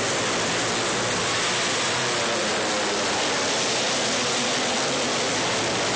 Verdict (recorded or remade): recorded